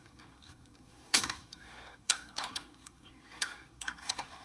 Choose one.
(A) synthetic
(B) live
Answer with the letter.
A